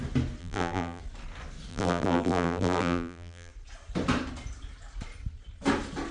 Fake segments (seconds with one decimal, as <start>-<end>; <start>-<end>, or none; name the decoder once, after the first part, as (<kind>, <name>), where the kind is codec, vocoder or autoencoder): 0.4-1.0 (vocoder, BigVGAN v2); 1.7-3.5

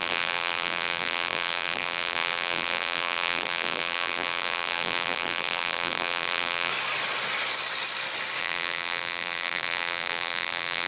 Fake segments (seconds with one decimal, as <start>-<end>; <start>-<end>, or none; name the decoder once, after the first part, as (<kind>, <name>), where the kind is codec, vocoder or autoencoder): 0.0-6.7 (vocoder, BigVGAN v2); 8.4-10.9

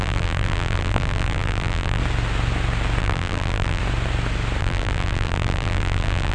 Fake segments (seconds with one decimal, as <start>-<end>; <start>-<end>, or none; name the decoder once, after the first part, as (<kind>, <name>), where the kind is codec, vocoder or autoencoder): 0.0-2.0 (vocoder, BigVGAN v2); 3.0-3.8; 4.6-6.3